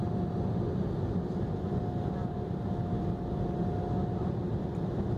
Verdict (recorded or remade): recorded